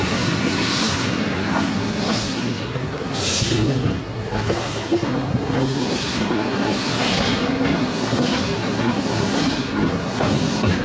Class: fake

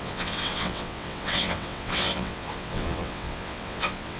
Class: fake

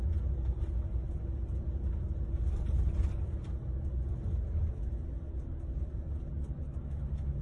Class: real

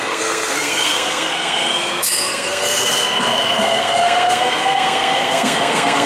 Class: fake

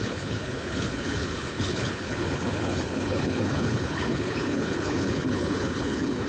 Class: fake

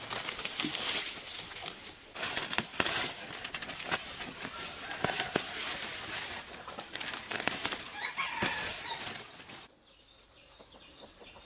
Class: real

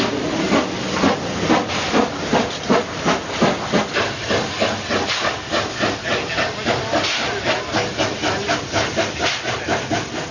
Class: real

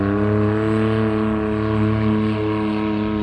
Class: real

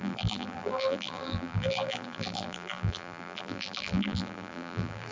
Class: fake